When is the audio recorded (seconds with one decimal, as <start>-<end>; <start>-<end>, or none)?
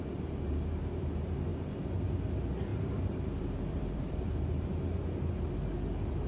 0.0-1.5; 2.3-2.7; 4.3-6.3